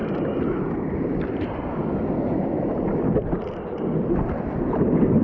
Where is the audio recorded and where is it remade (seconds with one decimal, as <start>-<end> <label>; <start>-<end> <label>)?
0.0-5.2 remade